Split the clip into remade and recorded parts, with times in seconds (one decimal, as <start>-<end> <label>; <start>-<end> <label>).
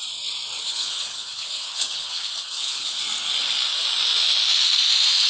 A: 0.0-0.6 recorded; 0.6-3.0 remade; 3.0-5.3 recorded